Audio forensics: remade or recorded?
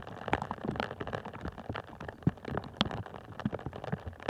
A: recorded